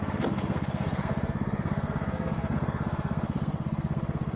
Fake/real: fake